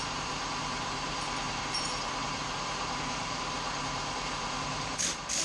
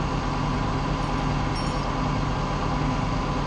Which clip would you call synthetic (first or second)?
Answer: first